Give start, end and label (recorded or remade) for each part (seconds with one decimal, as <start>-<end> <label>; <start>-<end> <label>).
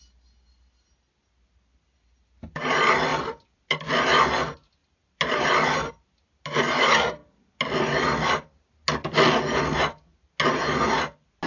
0.0-11.5 recorded